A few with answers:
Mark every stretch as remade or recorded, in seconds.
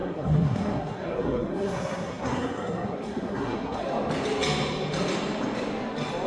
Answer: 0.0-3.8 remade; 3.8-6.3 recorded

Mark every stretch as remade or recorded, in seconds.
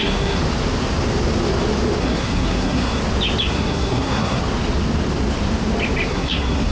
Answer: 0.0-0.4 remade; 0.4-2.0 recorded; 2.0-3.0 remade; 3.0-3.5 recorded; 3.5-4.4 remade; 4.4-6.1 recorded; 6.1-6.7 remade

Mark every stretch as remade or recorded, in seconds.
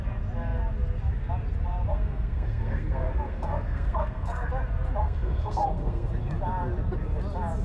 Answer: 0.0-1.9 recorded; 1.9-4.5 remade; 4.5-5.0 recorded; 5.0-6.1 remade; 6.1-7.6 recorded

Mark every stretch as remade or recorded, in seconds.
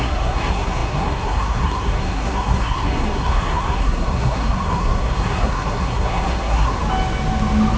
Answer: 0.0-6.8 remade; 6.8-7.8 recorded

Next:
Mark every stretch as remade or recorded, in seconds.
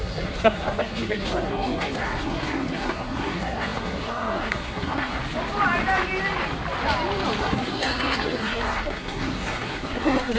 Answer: 0.0-5.2 remade; 5.2-7.4 recorded; 7.4-10.4 remade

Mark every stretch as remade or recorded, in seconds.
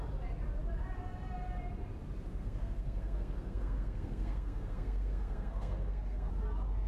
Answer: 0.0-2.4 recorded; 2.4-6.3 remade; 6.3-6.9 recorded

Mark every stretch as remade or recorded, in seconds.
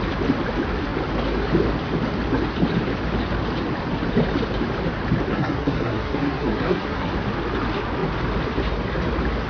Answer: 0.0-5.3 recorded; 5.3-7.1 remade; 7.1-9.5 recorded